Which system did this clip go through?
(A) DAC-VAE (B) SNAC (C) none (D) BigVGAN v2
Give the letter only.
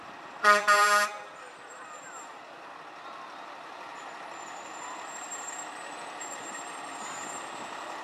D